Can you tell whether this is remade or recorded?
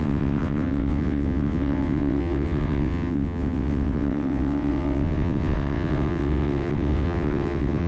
remade